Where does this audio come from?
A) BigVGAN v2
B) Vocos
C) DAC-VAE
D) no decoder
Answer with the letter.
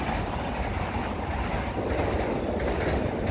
D